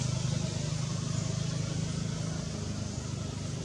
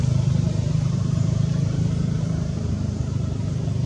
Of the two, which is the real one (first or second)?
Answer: first